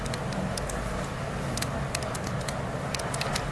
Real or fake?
real